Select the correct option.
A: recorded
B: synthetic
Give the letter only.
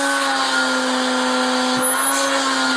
A